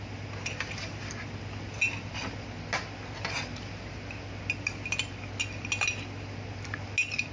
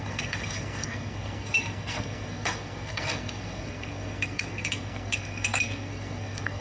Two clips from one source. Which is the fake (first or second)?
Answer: second